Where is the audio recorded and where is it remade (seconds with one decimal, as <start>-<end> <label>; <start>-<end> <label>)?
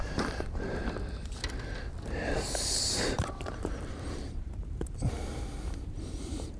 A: 0.0-0.8 remade; 0.8-1.8 recorded; 1.8-6.6 remade